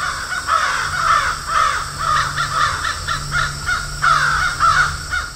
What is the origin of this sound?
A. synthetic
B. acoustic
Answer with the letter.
B